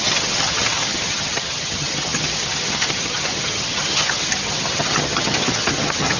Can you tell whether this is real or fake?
fake